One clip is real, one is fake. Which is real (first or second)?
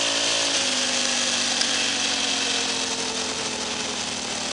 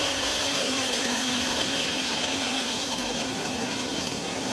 first